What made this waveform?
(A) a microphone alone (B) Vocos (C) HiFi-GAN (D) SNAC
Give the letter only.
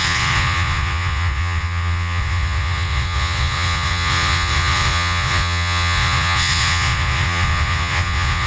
B